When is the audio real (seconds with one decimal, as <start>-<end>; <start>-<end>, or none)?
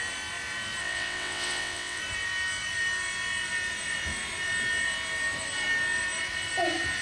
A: 0.0-0.8; 2.0-7.0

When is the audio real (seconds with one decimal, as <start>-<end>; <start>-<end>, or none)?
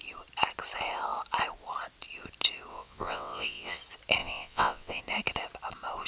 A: 0.0-2.7; 3.8-4.2; 5.0-6.1